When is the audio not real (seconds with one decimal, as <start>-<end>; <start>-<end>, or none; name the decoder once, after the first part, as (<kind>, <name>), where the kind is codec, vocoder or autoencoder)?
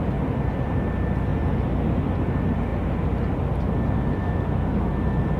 4.2-4.9 (autoencoder, DAC-VAE)